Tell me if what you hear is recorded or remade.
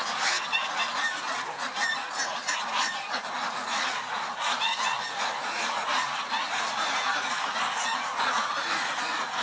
remade